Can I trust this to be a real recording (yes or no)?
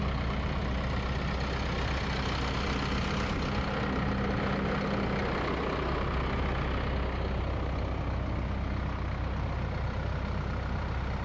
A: yes